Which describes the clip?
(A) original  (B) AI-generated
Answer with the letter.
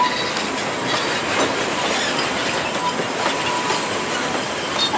A